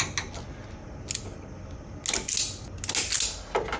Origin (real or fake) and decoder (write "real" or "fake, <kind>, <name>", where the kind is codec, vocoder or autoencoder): real